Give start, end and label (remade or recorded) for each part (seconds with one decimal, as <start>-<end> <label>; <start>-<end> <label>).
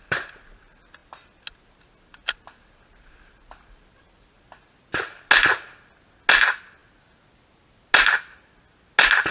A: 0.0-9.3 recorded